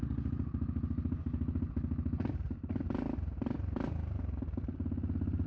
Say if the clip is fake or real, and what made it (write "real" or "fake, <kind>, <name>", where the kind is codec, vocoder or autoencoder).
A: real